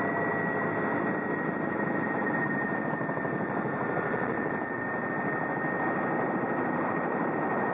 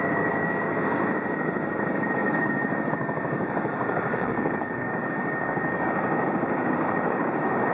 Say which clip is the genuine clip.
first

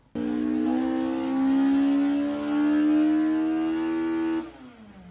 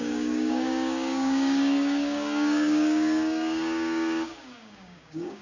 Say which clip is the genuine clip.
first